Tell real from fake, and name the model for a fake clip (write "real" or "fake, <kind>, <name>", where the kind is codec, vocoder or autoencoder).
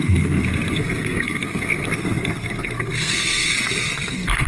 fake, codec, SNAC